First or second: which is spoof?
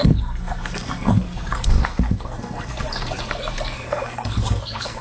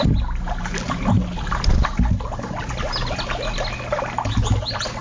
first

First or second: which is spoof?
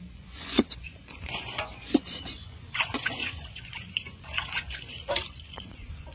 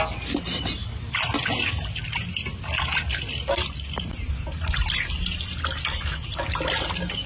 first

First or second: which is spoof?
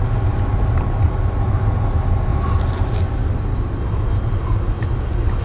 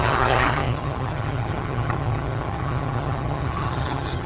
second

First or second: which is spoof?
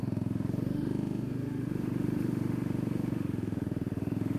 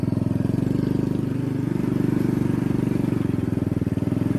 first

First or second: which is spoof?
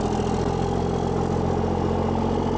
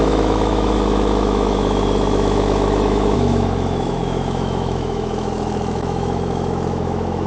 second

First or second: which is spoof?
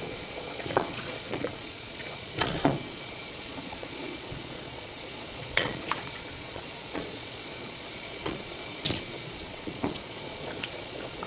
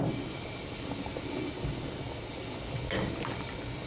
first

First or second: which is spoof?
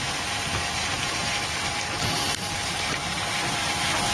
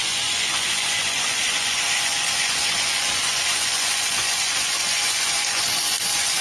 second